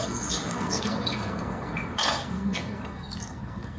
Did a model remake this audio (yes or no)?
yes